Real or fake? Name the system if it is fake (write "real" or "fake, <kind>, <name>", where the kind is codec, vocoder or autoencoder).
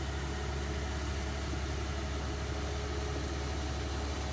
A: real